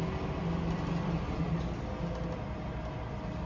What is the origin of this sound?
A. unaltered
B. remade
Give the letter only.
A